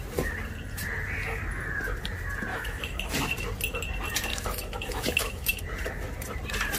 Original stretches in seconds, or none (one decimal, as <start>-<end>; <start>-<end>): 0.0-2.5; 3.1-4.3; 5.6-6.8

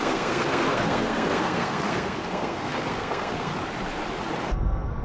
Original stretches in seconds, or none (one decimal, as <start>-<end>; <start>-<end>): 3.5-4.4

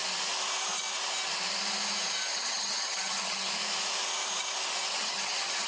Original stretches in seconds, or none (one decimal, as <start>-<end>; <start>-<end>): 0.0-2.3; 3.5-4.9

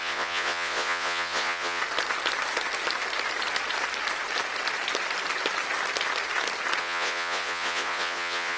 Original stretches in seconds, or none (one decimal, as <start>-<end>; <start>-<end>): 1.8-6.8